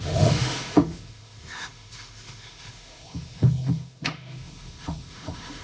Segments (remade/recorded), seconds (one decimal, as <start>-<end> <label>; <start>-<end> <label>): 0.0-5.6 remade